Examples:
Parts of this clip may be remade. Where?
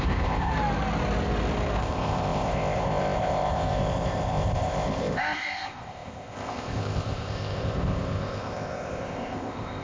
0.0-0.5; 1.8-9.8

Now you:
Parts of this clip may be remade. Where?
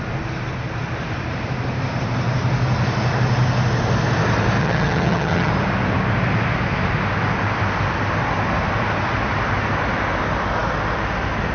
4.6-5.5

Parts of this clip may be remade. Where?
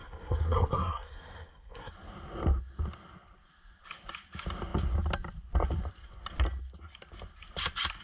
0.0-1.9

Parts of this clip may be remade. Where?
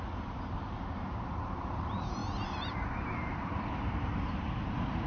0.0-2.2; 2.9-5.1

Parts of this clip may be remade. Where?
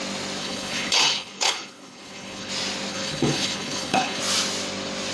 0.4-2.5; 2.9-4.2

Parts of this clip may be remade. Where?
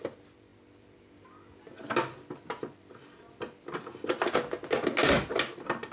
none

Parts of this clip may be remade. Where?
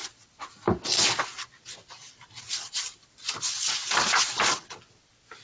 none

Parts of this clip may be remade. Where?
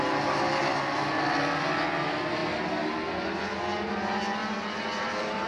none